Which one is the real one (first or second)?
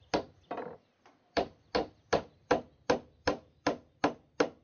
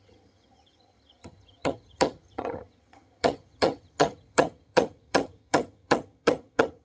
first